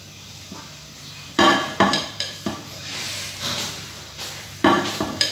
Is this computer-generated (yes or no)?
yes